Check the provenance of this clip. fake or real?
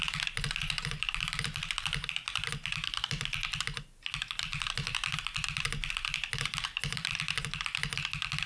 real